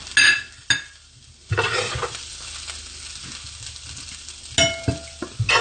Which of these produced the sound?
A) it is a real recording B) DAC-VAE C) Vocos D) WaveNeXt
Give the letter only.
A